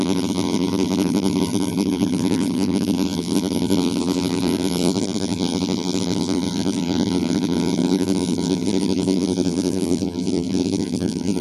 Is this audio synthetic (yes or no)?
yes